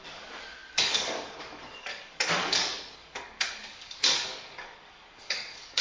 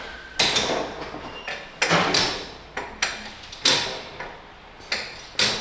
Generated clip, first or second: first